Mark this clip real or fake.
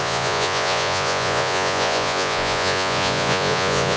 fake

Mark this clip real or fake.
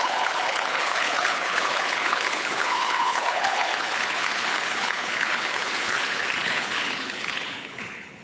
fake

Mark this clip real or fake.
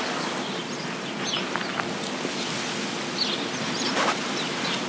real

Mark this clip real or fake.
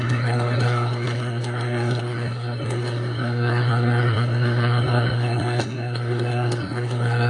fake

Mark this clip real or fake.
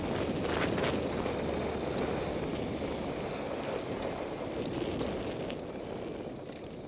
real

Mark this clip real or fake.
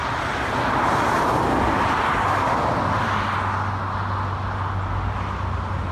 real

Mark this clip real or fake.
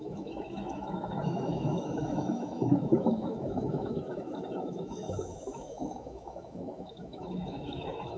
fake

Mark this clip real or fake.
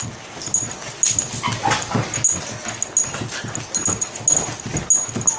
real